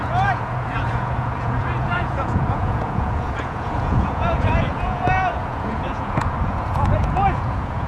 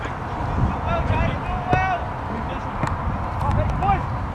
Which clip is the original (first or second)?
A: second